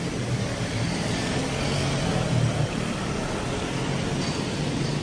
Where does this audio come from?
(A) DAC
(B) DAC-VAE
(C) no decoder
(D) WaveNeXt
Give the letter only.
C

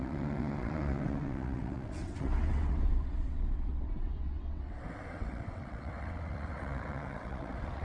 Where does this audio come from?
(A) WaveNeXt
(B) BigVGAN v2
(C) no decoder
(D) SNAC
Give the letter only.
A